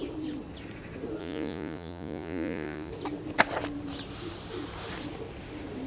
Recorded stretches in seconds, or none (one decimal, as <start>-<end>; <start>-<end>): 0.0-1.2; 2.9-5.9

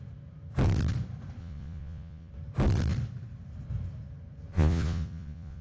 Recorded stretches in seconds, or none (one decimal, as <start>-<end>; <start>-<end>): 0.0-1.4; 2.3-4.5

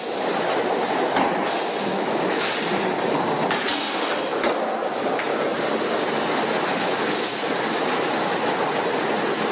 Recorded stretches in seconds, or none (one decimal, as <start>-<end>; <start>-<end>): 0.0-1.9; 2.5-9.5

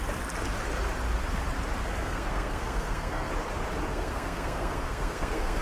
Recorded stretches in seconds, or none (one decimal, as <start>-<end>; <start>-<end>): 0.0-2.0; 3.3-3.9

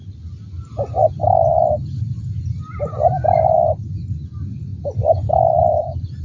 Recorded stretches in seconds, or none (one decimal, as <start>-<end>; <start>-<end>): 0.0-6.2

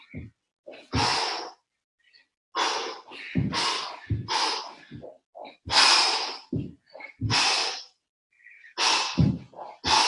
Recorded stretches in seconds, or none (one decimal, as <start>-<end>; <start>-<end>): 0.0-10.1

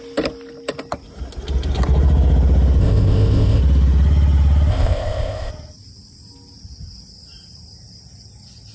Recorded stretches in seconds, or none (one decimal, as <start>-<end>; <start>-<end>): 0.0-2.8; 3.6-4.7; 5.5-8.7